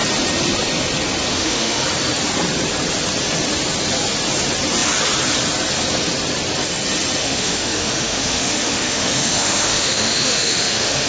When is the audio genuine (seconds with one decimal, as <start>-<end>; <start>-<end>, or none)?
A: 0.0-1.3; 1.8-7.2

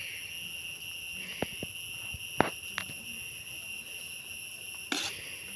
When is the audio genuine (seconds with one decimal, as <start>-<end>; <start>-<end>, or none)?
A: 0.0-5.6

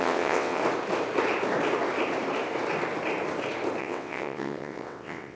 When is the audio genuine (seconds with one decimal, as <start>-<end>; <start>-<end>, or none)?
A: 0.6-3.8